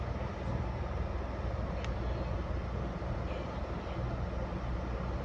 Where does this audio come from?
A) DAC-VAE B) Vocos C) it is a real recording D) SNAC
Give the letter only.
C